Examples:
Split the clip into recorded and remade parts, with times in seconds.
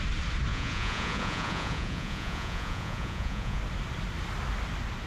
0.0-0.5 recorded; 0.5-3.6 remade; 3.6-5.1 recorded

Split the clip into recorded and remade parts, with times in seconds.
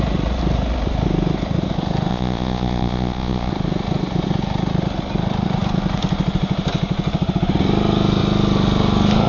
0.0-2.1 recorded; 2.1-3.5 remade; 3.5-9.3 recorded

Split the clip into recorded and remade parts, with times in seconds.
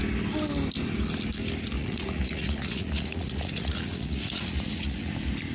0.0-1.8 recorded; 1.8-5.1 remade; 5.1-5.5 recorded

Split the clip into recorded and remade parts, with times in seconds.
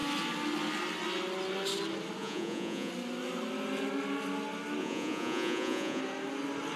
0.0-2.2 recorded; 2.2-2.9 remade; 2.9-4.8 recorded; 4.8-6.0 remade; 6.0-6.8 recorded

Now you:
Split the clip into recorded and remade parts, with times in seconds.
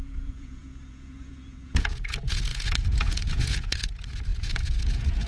0.0-5.3 remade